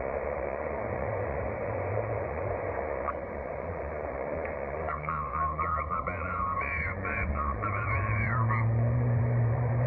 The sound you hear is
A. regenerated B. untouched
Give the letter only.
A